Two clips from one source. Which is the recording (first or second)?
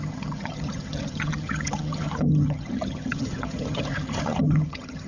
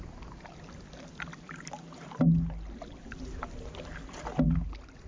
second